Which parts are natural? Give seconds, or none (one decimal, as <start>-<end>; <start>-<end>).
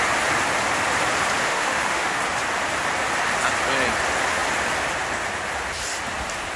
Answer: 0.0-1.4; 2.2-6.6